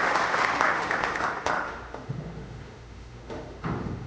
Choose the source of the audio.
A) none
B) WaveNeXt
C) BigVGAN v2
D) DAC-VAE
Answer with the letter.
D